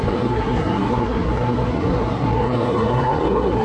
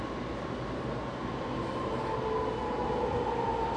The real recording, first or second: second